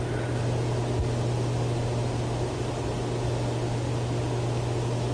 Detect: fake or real real